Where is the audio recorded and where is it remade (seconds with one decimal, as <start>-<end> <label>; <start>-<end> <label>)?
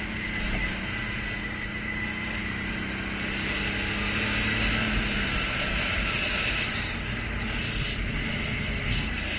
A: 0.0-9.4 recorded